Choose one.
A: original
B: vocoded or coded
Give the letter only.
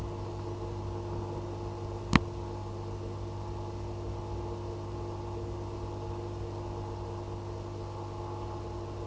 A